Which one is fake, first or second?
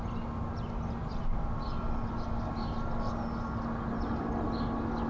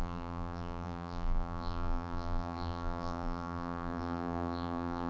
second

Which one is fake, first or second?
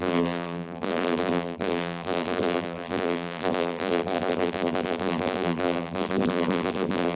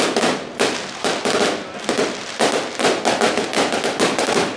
first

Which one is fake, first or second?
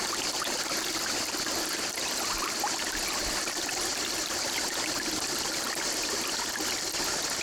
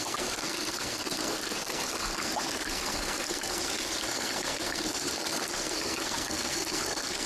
second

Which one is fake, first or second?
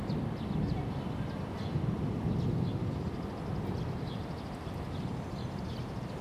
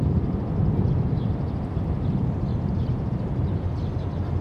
second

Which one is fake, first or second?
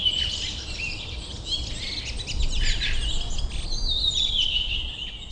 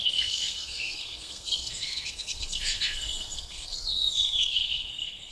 second